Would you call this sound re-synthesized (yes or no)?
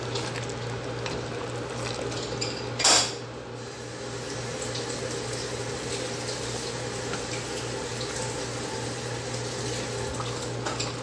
no